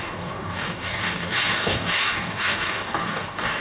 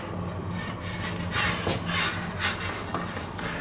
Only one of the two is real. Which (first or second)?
second